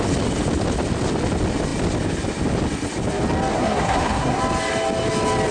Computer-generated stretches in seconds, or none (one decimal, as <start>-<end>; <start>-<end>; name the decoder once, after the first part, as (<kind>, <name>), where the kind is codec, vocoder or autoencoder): 3.5-4.4 (codec, SNAC)

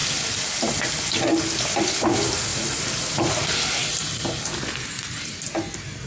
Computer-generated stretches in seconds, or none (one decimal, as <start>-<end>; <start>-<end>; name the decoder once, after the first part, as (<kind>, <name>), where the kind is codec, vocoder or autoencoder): 2.5-4.7 (vocoder, BigVGAN v2)

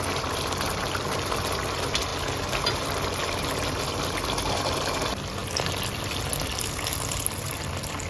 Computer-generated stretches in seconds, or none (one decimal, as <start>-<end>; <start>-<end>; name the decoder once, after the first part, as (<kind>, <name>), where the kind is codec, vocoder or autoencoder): none

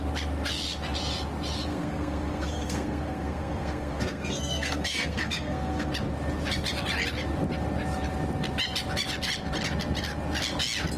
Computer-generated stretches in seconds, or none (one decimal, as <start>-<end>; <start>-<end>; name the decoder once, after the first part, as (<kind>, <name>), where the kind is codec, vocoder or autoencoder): 1.7-5.9 (codec, SNAC)

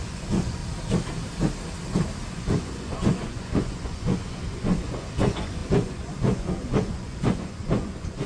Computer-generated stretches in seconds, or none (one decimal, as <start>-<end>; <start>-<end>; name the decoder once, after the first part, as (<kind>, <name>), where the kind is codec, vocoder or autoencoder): 0.0-0.6 (vocoder, Vocos); 2.3-8.3